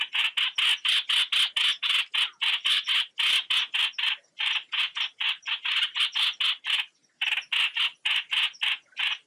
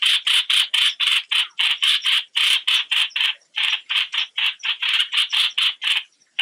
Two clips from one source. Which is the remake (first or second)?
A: second